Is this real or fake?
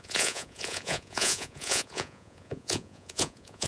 fake